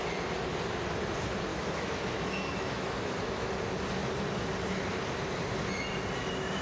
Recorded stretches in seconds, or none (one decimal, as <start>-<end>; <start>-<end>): 0.0-1.5; 3.5-6.6